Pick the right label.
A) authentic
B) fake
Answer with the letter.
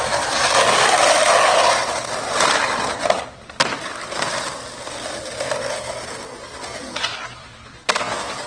A